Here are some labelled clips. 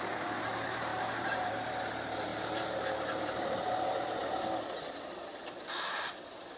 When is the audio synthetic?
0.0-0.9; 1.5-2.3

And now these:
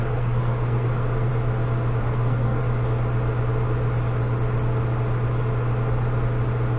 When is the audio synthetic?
0.0-1.3; 2.0-2.6

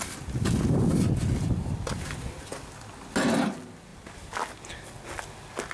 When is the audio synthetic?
none